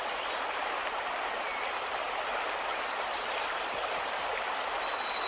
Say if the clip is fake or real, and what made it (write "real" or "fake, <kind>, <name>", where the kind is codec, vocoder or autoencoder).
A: real